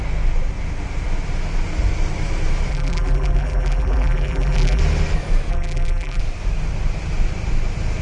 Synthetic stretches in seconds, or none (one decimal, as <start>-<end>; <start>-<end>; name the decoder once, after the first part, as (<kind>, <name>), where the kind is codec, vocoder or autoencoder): 2.7-4.8 (vocoder, BigVGAN v2); 5.5-6.2